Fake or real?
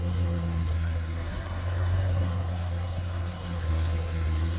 fake